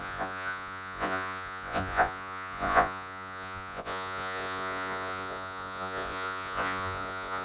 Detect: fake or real fake